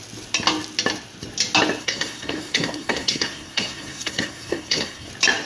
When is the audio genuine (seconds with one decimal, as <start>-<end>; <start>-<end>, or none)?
0.0-1.8; 5.1-5.5